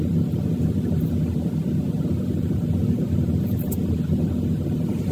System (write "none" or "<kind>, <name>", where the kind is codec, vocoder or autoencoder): none